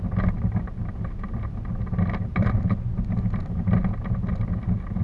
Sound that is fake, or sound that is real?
real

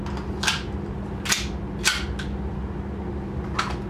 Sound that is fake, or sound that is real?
real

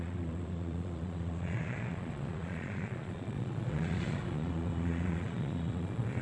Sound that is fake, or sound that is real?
fake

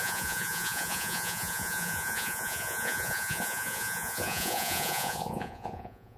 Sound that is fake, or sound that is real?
fake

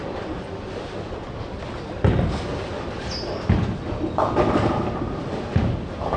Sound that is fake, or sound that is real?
real